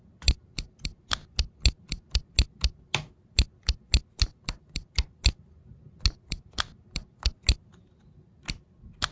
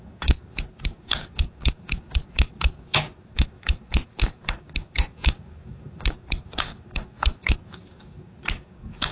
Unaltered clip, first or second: first